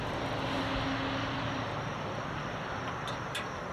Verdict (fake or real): real